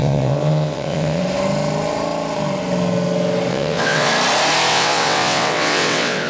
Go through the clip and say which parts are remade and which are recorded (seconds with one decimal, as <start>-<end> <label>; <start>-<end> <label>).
0.0-1.2 remade; 1.2-3.5 recorded; 3.5-4.1 remade; 4.1-4.7 recorded; 4.7-6.3 remade